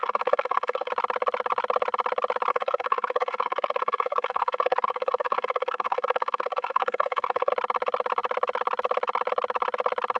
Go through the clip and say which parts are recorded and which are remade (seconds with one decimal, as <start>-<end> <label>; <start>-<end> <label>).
0.0-0.9 remade; 0.9-2.5 recorded; 2.5-7.5 remade; 7.5-10.2 recorded